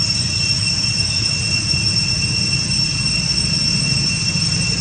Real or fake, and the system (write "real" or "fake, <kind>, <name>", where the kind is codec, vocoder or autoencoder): real